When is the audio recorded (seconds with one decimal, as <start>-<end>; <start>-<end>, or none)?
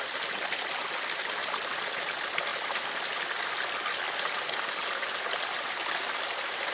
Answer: 0.0-6.7